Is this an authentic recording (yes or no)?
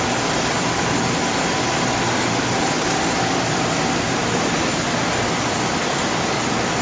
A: yes